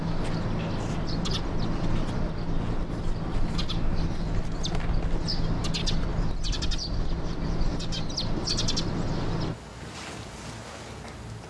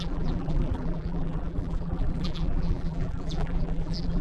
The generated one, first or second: second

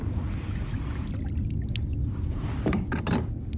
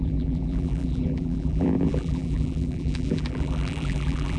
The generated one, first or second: second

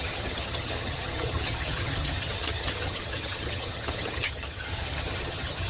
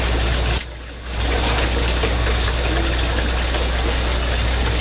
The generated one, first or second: first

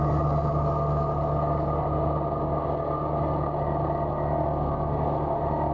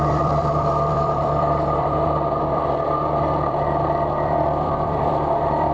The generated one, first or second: second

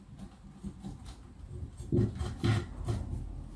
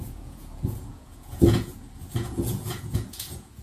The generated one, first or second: second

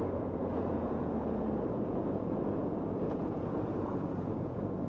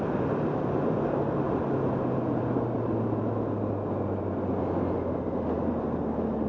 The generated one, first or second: first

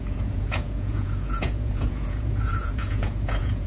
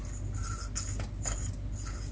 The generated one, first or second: first